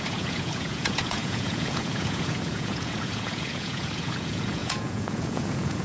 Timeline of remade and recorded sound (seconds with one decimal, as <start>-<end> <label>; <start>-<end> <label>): 0.0-5.8 remade